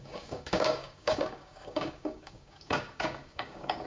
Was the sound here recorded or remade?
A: remade